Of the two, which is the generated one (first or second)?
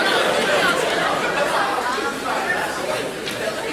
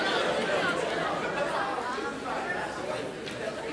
first